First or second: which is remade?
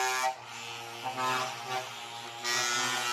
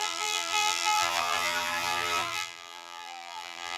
second